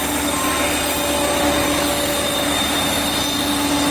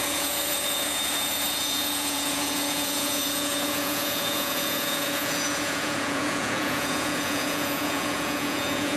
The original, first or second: first